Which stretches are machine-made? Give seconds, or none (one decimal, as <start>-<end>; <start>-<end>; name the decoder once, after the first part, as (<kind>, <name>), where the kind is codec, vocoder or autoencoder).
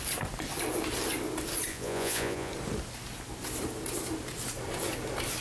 1.7-2.5 (vocoder, Vocos)